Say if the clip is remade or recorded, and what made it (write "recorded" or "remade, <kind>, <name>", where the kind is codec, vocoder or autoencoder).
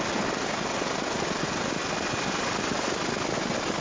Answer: recorded